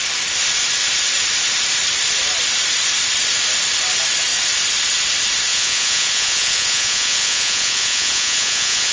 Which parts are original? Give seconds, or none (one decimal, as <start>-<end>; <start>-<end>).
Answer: 0.0-5.5